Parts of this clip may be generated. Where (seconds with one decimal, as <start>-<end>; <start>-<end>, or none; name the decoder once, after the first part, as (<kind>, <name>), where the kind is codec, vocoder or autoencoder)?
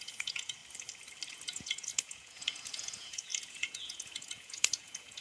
0.0-0.6 (vocoder, Vocos); 1.3-5.2